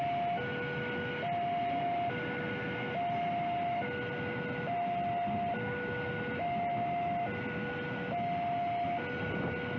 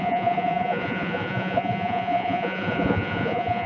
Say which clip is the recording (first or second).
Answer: first